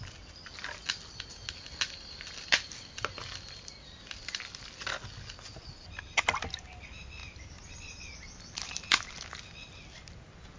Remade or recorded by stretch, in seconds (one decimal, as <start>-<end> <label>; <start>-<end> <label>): 0.0-10.6 recorded